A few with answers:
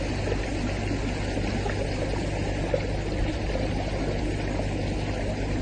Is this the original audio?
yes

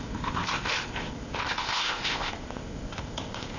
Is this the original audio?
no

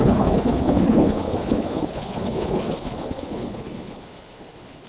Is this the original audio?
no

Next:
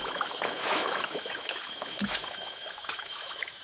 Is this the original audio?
no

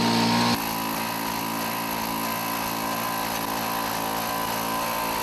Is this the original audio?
yes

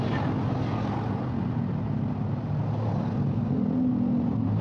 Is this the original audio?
yes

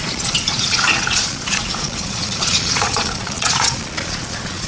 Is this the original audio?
no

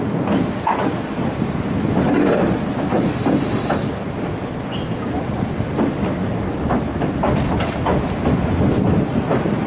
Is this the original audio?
yes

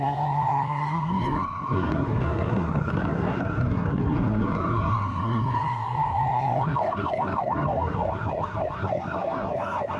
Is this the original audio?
no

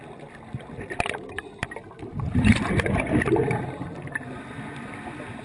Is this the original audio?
yes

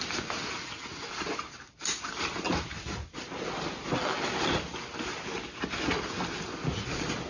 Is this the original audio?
yes